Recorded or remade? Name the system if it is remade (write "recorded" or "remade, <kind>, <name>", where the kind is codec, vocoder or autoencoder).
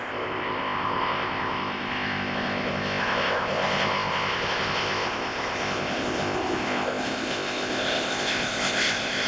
remade, codec, ZipCodec